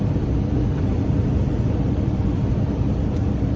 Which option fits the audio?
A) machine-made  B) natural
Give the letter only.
A